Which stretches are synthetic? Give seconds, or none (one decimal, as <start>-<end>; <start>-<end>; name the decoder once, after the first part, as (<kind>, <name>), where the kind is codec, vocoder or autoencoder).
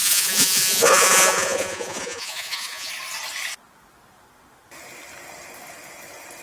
0.0-2.9 (vocoder, Vocos)